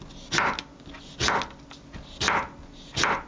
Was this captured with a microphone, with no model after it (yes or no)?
yes